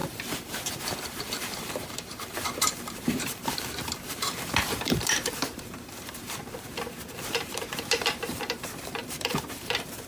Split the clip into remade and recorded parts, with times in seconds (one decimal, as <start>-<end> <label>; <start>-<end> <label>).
0.0-10.1 remade